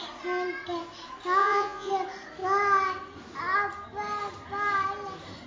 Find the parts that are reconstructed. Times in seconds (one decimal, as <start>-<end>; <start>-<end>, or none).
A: 1.4-1.9